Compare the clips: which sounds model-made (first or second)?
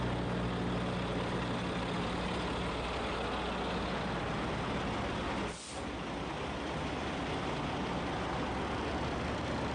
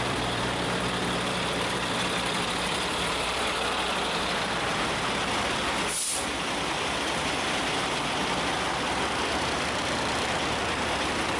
second